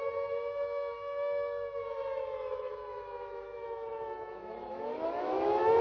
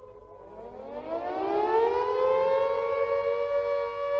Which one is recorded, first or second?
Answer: second